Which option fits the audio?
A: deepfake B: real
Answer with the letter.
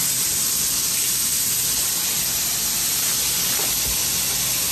B